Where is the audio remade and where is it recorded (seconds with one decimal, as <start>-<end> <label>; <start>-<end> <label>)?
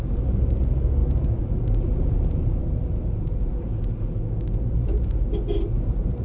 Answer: 0.0-6.2 recorded